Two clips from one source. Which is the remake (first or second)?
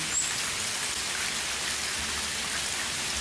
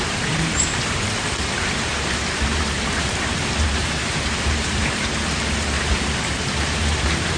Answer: second